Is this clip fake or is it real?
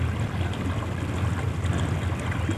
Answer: real